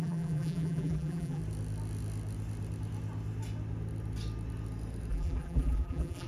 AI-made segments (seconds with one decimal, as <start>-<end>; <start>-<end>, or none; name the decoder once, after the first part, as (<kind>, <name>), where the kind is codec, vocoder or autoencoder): 0.0-1.4 (vocoder, BigVGAN v2); 5.1-6.3